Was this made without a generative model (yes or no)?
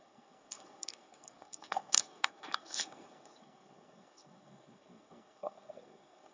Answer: no